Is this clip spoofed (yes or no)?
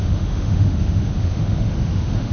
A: yes